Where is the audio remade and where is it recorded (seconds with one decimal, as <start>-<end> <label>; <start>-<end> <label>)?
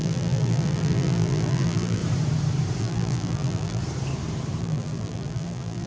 0.0-2.0 remade; 2.0-2.8 recorded; 2.8-3.8 remade; 3.8-4.6 recorded; 4.6-5.9 remade